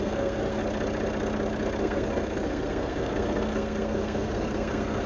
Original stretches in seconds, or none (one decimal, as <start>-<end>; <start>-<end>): 0.6-1.8